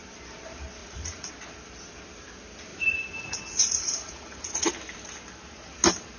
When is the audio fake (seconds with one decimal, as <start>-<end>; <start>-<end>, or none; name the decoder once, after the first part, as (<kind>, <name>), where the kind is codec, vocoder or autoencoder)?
0.8-1.3 (vocoder, Vocos); 2.7-4.7